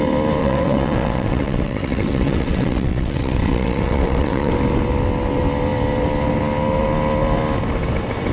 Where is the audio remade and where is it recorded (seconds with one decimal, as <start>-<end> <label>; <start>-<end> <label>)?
0.0-0.4 recorded; 0.4-4.5 remade; 4.5-8.3 recorded